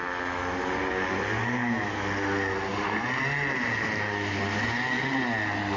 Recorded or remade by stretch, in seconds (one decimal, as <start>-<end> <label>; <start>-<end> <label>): 0.0-5.8 recorded